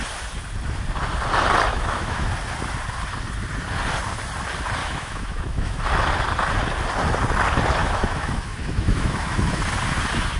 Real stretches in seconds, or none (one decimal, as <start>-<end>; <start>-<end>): 0.0-1.7; 2.3-4.8; 5.8-7.8; 9.6-10.4